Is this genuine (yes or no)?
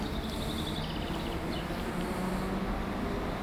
yes